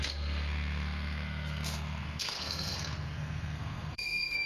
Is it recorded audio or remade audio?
remade